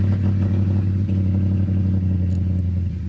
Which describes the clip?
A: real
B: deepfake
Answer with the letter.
A